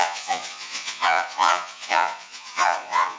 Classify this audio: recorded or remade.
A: remade